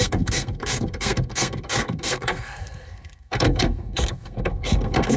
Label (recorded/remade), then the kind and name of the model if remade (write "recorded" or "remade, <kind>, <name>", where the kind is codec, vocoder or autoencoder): remade, codec, SNAC